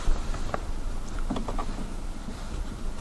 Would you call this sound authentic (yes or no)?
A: no